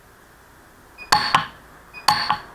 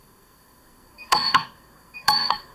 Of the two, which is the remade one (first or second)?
second